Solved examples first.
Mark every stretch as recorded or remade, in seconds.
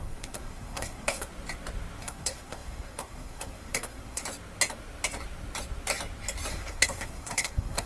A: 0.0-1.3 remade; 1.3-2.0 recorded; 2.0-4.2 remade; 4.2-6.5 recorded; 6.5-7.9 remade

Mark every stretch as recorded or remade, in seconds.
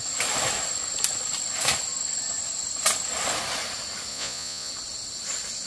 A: 0.0-4.1 recorded; 4.1-4.7 remade; 4.7-5.7 recorded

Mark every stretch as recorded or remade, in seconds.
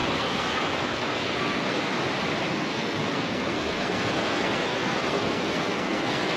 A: 0.0-2.0 remade; 2.0-2.5 recorded; 2.5-6.4 remade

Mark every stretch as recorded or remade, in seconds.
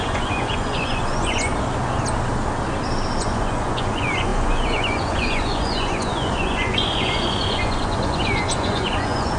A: 0.0-1.5 remade; 1.5-3.2 recorded; 3.2-9.4 remade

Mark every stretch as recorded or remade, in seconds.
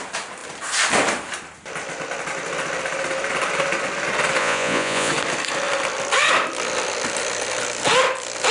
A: 0.0-4.4 recorded; 4.4-5.1 remade; 5.1-8.5 recorded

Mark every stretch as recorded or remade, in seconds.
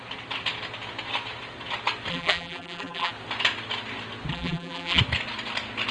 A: 0.0-2.1 recorded; 2.1-3.1 remade; 3.1-4.3 recorded; 4.3-5.0 remade; 5.0-5.9 recorded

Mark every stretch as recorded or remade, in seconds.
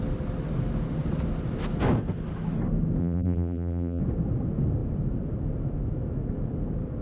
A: 0.0-3.0 recorded; 3.0-4.0 remade; 4.0-7.0 recorded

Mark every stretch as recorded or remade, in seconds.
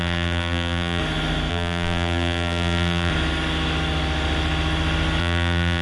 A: 0.0-1.0 remade; 1.0-1.5 recorded; 1.5-3.1 remade; 3.1-5.2 recorded; 5.2-5.8 remade